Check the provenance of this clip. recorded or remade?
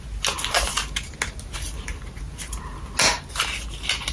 recorded